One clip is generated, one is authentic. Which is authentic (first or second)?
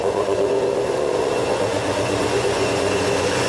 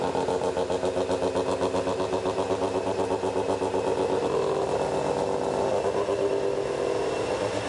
second